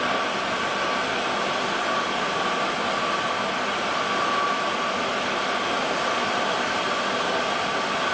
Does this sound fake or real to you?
fake